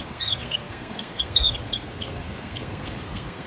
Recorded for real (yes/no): no